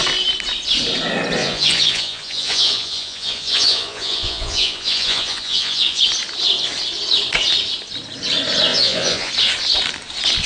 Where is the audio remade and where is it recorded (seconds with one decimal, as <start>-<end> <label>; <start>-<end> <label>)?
0.0-1.4 recorded; 1.4-6.0 remade; 6.0-8.7 recorded; 8.7-9.3 remade; 9.3-10.5 recorded